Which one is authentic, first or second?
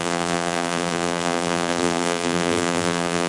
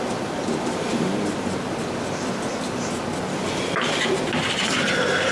second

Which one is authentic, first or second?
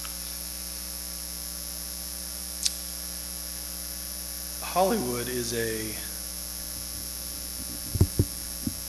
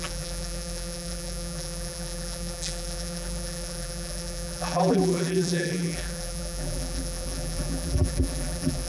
first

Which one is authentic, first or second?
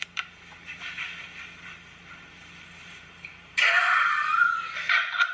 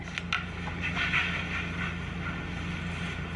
second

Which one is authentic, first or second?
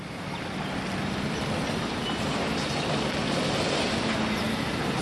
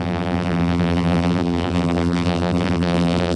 first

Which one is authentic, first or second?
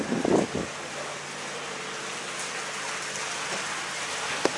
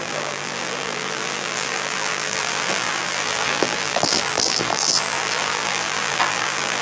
first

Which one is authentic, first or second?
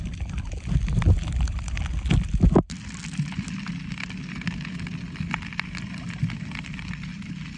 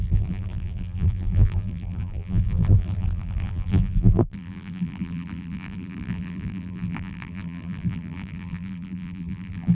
first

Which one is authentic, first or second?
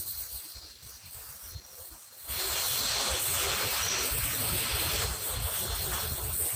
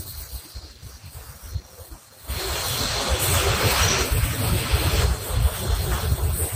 second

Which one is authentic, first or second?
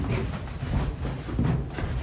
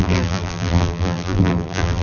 first